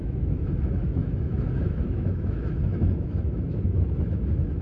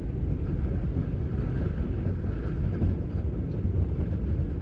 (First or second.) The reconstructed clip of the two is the first